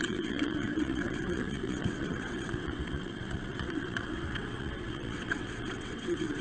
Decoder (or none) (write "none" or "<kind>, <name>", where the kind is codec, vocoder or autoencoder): vocoder, WaveNeXt